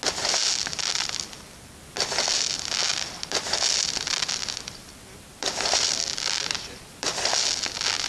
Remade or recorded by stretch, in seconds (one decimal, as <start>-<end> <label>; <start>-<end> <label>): 0.0-0.6 recorded; 0.6-1.8 remade; 1.8-2.9 recorded; 2.9-7.3 remade; 7.3-8.1 recorded